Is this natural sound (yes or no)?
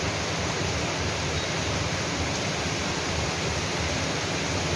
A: no